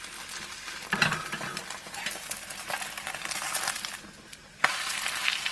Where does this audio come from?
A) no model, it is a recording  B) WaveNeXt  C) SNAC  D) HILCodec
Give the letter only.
A